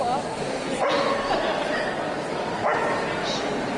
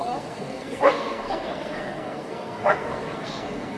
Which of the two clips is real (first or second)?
first